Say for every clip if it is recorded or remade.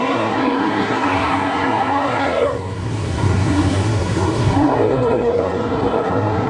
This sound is remade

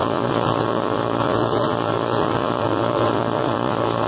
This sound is remade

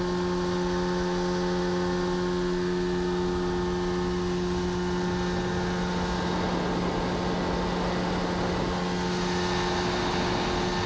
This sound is recorded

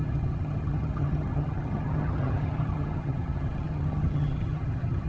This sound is remade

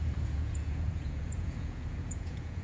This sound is remade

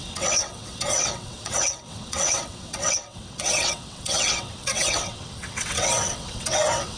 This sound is remade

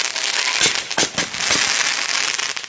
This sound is recorded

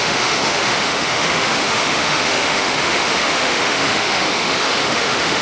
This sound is remade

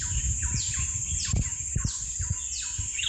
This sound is recorded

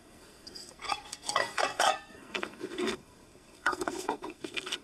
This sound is remade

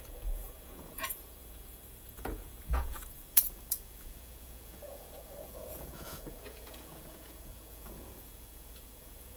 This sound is remade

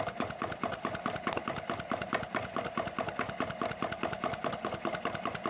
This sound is recorded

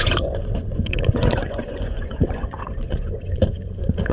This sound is remade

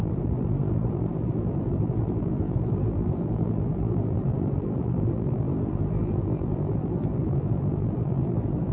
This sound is remade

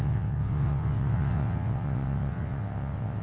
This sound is remade